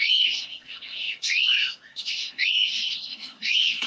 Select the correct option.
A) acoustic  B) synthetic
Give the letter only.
B